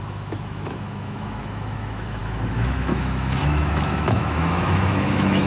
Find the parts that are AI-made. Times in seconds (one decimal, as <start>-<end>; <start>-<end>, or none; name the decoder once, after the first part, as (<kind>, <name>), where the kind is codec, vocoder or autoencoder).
0.0-5.5 (autoencoder, DAC-VAE)